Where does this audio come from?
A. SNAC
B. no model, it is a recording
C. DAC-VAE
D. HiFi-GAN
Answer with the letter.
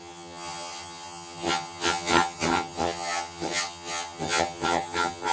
D